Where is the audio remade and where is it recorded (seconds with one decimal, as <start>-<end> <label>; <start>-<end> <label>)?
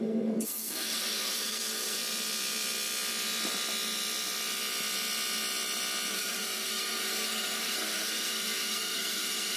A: 0.0-2.0 remade; 2.0-6.1 recorded; 6.1-9.6 remade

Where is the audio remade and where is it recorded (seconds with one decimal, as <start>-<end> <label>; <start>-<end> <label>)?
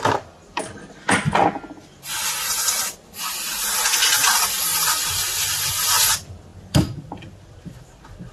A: 0.0-8.3 recorded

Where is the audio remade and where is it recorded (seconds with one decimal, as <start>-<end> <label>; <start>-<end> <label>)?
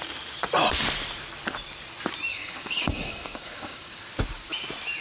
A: 0.0-2.3 recorded; 2.3-4.0 remade; 4.0-5.0 recorded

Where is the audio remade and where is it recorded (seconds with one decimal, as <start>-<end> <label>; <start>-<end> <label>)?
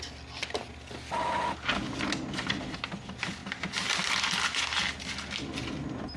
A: 0.0-6.2 recorded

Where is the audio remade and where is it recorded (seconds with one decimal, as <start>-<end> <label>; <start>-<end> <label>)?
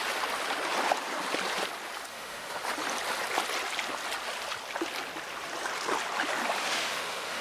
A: 0.0-2.1 recorded; 2.1-2.6 remade; 2.6-6.6 recorded; 6.6-7.4 remade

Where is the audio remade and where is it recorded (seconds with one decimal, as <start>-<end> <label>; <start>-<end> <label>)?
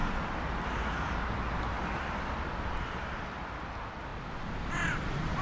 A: 0.0-5.4 recorded